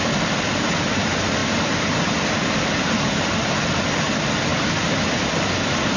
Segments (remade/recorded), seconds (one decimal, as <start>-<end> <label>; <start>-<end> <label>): 0.0-6.0 recorded